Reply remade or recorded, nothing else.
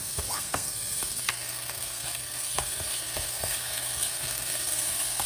remade